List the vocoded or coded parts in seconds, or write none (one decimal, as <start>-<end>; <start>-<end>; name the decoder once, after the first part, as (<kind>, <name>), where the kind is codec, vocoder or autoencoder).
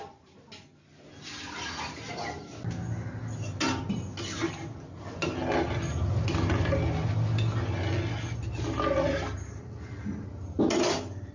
none